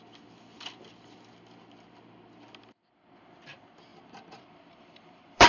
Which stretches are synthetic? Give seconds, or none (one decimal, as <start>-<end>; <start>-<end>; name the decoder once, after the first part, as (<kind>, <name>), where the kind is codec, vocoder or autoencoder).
3.9-5.5 (vocoder, BigVGAN v2)